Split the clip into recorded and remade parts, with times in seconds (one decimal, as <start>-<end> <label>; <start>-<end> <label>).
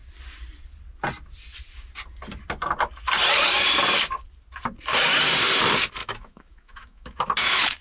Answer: 0.0-6.0 recorded; 6.0-7.8 remade